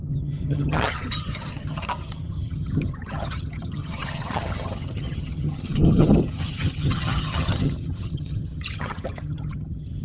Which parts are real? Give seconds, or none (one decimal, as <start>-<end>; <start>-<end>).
none